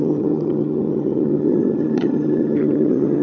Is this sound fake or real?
fake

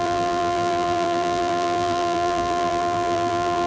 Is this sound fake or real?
fake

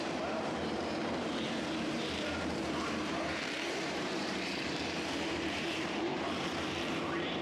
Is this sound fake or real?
fake